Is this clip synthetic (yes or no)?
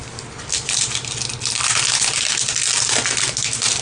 no